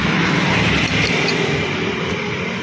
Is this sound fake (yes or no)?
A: no